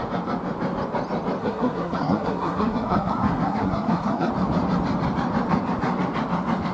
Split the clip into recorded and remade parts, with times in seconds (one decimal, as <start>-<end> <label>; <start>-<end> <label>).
0.0-1.4 recorded; 1.4-4.3 remade; 4.3-6.7 recorded